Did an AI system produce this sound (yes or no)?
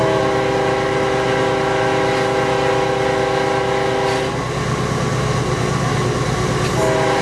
no